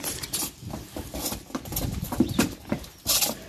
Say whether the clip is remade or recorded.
recorded